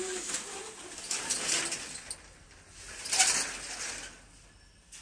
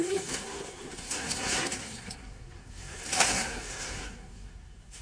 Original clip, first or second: first